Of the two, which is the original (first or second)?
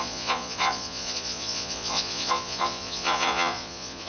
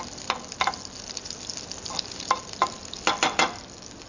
second